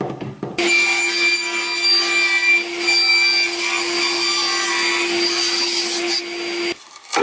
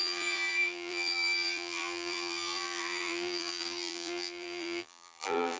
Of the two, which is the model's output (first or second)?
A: second